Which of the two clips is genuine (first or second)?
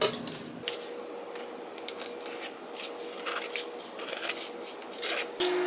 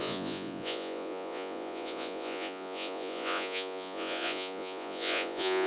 first